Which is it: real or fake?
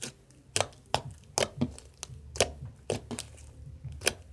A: real